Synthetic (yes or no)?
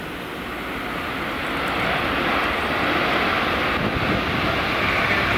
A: no